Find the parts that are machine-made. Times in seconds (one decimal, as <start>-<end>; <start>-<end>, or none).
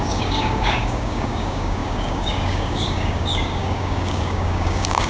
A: 0.0-5.1